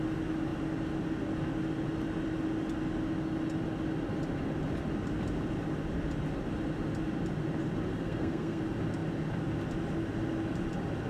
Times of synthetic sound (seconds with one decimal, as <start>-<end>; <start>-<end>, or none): 7.9-8.6